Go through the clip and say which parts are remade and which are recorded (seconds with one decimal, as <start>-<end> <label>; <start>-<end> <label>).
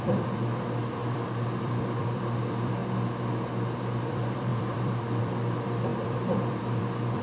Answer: 0.0-2.8 remade; 2.8-4.1 recorded; 4.1-7.2 remade